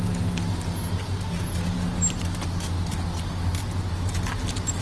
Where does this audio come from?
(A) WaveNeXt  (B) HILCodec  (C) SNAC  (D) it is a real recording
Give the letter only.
D